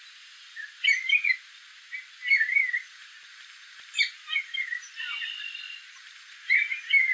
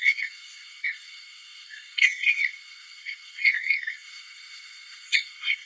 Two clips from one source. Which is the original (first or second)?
first